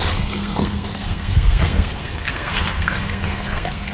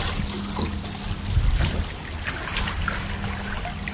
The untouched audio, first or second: second